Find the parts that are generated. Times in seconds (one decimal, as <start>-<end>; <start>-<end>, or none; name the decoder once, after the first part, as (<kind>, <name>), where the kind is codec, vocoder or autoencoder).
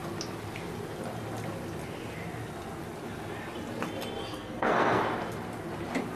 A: 4.3-5.0 (codec, SNAC)